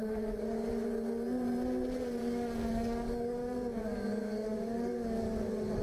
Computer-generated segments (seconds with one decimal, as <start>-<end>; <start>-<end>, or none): 0.0-0.7; 2.2-5.8